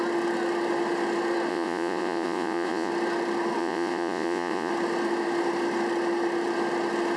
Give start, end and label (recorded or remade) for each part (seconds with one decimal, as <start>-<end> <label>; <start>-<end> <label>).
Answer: 0.0-1.5 recorded; 1.5-2.9 remade; 2.9-3.6 recorded; 3.6-4.7 remade; 4.7-7.2 recorded